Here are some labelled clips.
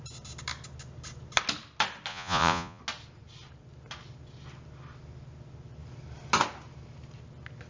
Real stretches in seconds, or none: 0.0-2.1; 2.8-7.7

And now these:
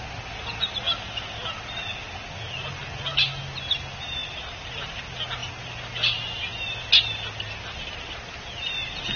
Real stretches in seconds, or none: 0.0-4.2; 4.8-9.2

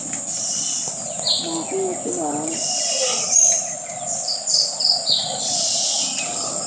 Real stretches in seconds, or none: 0.0-1.9; 5.9-6.7